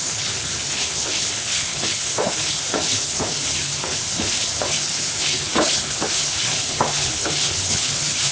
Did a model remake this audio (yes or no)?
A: yes